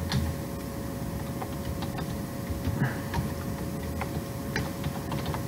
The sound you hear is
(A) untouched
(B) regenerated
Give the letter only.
A